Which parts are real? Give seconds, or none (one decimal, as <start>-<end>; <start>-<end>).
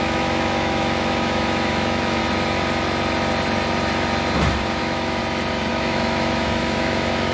2.2-4.8; 5.2-5.7